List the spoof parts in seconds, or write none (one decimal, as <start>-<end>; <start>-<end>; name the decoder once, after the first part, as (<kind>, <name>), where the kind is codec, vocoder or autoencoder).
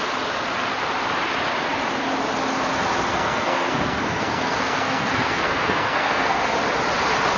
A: 3.1-6.4 (codec, SNAC)